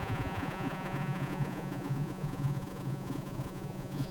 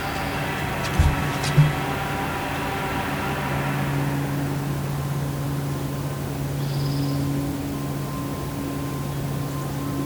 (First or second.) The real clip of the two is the second